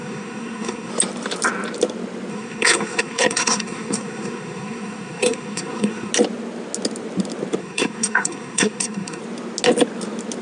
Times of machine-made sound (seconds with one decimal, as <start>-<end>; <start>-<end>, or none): 0.0-0.9; 2.3-6.1; 7.6-9.2